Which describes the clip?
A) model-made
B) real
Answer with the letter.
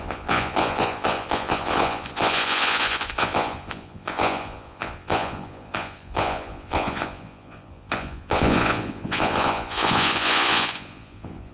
A